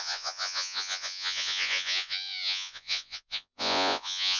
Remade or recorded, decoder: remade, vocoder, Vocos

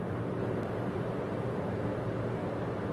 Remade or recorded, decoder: recorded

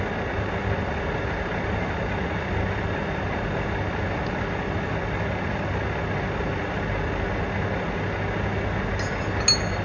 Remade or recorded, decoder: recorded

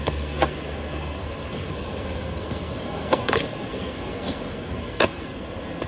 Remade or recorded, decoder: remade, codec, SNAC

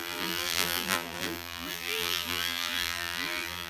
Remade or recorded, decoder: remade, vocoder, BigVGAN v2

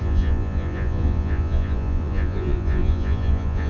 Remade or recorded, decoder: remade, vocoder, Vocos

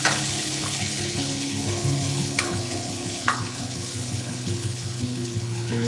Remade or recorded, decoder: remade, codec, HILCodec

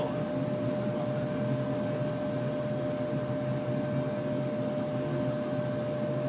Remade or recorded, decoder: recorded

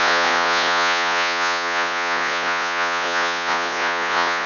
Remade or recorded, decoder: remade, vocoder, Vocos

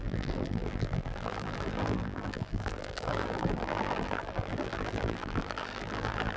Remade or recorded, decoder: remade, vocoder, BigVGAN v2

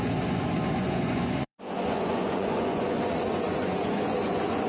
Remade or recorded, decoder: remade, vocoder, Vocos